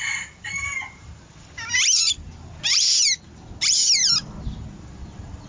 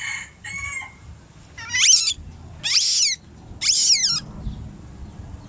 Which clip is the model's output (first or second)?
first